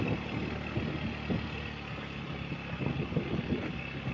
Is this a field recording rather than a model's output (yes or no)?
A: yes